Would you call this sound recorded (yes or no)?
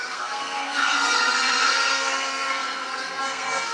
no